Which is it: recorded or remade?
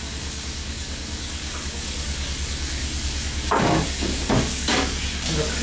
remade